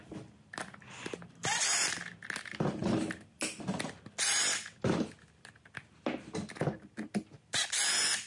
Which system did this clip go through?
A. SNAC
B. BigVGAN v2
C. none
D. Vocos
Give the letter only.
C